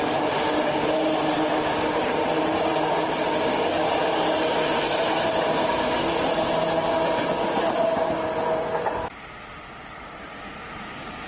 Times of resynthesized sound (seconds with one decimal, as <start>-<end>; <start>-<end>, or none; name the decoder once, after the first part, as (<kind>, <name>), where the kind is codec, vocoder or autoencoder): 2.7-3.6 (vocoder, BigVGAN v2)